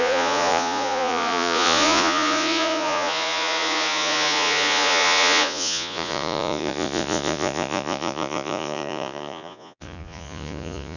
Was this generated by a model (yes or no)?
yes